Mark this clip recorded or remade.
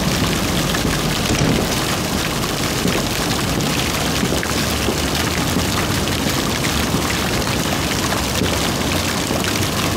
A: recorded